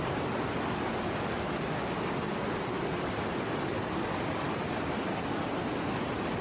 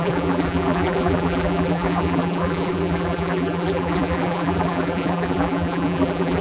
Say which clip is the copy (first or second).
second